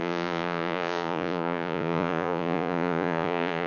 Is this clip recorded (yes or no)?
no